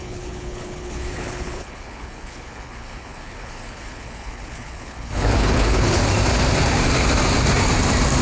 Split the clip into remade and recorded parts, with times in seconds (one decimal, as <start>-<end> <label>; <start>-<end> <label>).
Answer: 0.0-6.0 remade; 6.0-8.2 recorded